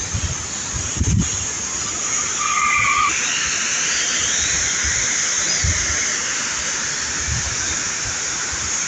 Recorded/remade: recorded